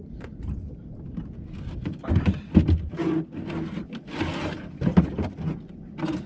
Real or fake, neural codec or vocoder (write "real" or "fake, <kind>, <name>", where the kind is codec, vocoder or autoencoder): real